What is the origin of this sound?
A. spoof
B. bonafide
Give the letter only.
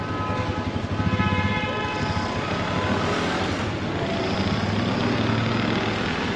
B